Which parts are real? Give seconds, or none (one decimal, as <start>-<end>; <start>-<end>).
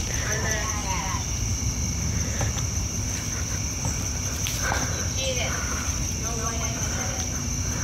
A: 0.8-5.5; 6.4-7.3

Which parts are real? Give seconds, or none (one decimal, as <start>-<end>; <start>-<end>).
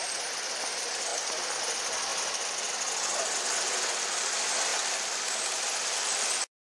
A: 0.0-6.7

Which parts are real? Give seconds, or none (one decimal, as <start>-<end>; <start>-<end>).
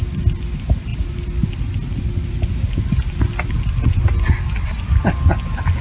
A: 0.0-5.8